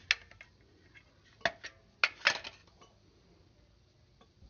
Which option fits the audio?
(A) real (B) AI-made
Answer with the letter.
A